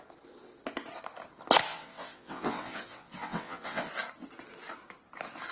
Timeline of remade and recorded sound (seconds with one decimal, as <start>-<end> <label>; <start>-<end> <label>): 0.0-1.7 recorded; 1.7-3.9 remade; 3.9-5.5 recorded